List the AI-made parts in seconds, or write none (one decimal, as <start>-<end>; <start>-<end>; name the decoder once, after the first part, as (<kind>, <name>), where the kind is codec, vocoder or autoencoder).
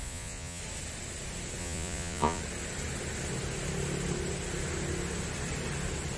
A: 0.0-0.6 (vocoder, Vocos); 1.6-2.4